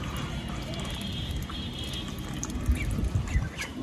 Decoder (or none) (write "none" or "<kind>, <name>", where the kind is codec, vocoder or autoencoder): none